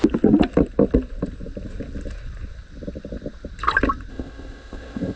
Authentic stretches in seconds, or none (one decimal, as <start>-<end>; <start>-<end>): 0.0-4.1